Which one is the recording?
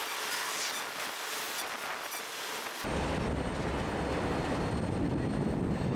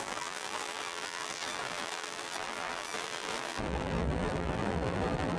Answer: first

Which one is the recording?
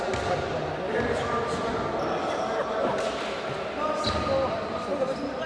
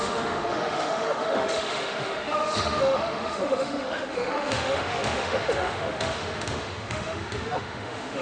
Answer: first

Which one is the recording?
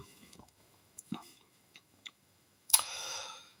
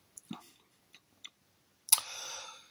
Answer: second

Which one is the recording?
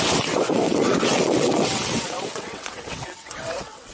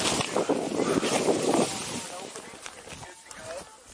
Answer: second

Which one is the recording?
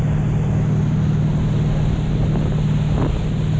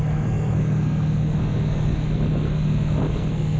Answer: first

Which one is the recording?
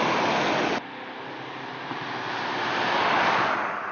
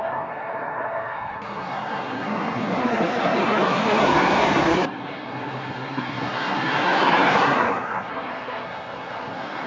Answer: first